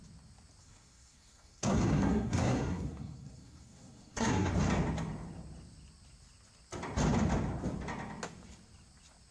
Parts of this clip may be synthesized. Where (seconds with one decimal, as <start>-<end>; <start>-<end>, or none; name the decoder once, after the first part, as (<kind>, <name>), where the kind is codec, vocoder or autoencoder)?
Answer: 0.6-4.5 (codec, SNAC)